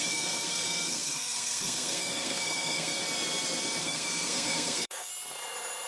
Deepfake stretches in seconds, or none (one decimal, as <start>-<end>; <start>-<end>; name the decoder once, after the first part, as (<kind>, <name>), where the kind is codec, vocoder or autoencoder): 0.0-3.0 (codec, SNAC); 3.8-5.1